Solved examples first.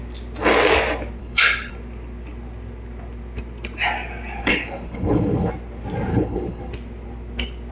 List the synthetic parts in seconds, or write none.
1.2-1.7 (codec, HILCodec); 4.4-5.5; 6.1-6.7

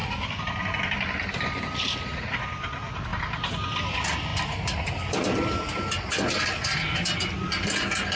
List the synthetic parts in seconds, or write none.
none